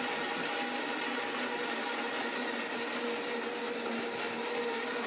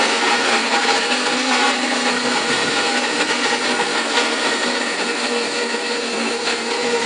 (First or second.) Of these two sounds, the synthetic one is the second